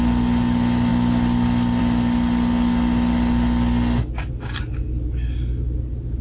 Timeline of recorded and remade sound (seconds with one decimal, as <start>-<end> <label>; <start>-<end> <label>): 0.0-6.2 recorded